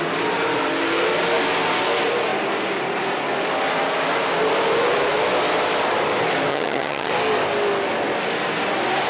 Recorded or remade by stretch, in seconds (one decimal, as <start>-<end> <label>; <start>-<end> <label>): 0.0-6.5 recorded; 6.5-7.1 remade; 7.1-9.1 recorded